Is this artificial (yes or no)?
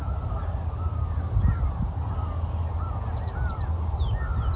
no